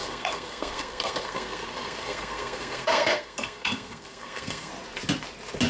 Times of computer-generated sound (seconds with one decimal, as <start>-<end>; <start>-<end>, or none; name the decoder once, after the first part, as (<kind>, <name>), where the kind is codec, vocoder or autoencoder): 0.0-4.7 (codec, SNAC)